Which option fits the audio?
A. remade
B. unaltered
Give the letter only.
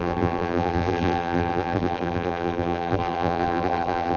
A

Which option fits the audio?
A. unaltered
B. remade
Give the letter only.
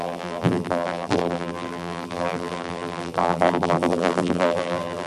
B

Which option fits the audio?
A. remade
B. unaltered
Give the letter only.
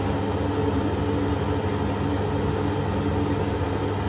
B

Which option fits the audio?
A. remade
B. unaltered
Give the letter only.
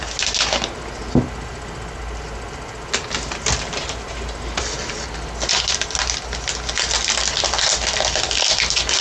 B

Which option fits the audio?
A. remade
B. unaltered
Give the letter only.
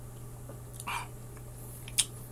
B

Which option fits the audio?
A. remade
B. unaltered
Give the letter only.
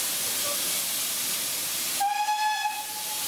B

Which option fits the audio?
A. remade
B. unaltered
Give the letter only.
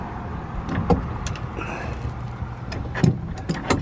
B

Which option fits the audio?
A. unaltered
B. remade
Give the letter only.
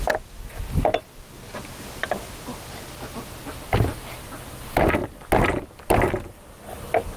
A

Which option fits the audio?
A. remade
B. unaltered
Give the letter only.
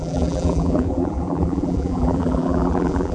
A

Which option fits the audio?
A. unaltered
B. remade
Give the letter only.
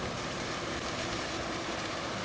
B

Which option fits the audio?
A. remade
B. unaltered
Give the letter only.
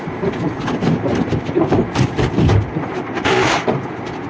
A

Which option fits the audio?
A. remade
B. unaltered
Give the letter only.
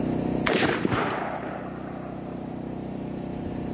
A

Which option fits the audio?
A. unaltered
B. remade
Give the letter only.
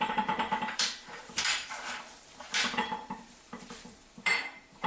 B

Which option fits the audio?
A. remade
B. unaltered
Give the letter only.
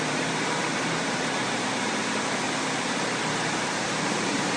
A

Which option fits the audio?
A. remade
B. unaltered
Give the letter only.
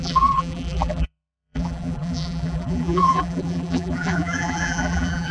A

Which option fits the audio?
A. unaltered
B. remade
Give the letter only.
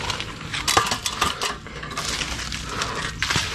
A